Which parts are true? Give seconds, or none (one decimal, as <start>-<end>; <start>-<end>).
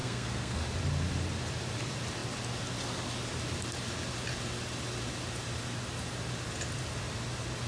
0.6-7.7